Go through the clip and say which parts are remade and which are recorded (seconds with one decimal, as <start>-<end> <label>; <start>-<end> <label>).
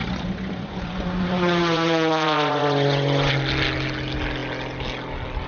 0.0-3.3 remade; 3.3-5.5 recorded